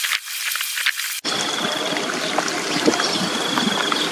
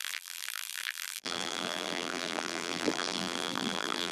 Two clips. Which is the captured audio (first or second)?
first